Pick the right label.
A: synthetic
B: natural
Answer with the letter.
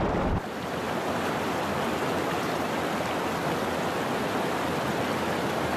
B